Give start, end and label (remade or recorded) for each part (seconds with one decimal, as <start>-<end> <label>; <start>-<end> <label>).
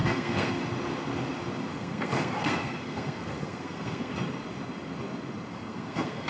0.0-0.6 remade; 0.6-1.7 recorded; 1.7-4.1 remade; 4.1-5.5 recorded; 5.5-6.3 remade